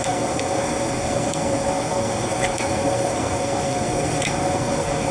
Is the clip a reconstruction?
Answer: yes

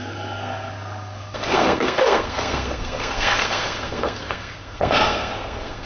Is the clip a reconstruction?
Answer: yes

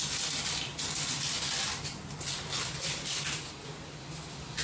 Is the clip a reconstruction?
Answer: no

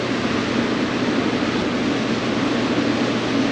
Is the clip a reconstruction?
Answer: no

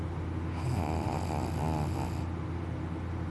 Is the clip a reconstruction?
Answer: no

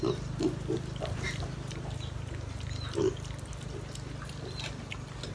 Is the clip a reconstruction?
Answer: no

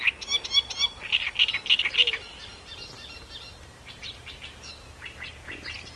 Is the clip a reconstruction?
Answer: no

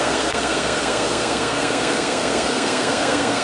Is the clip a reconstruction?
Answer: yes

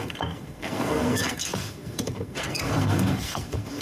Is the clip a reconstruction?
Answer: yes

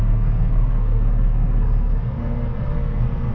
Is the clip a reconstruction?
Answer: yes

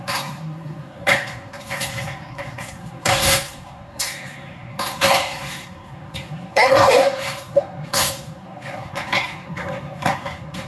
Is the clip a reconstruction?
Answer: yes